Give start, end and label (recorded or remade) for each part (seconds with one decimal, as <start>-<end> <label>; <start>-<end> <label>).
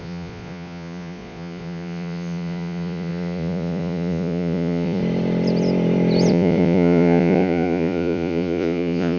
0.0-5.0 remade; 5.0-6.3 recorded; 6.3-9.2 remade